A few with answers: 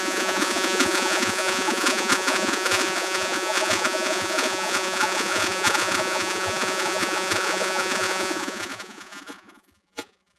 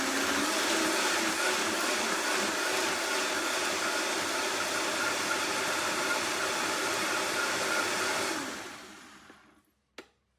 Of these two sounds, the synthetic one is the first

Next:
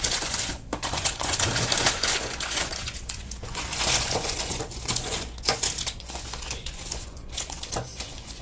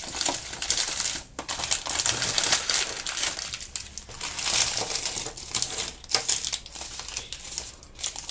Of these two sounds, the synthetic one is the first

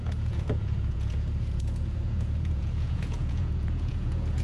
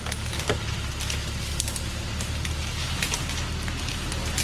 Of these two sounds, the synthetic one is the first